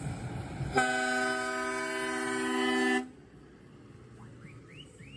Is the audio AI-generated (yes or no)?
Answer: no